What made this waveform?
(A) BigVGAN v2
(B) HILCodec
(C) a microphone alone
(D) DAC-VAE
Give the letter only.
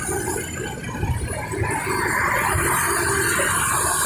C